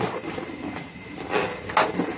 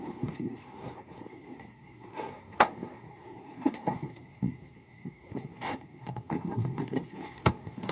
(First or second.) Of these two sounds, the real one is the first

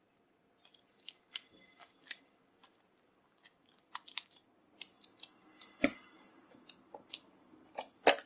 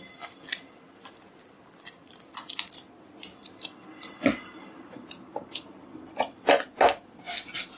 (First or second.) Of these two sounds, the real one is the first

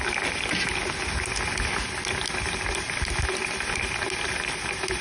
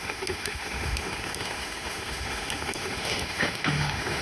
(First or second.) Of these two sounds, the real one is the first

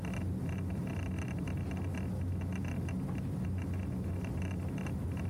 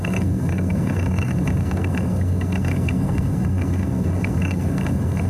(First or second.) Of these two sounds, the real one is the first